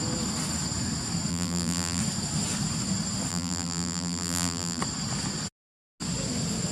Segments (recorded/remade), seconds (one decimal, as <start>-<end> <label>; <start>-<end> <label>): 0.0-1.3 recorded; 1.3-2.0 remade; 2.0-3.3 recorded; 3.3-4.8 remade; 4.8-6.7 recorded